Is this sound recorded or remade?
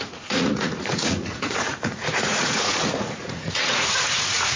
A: remade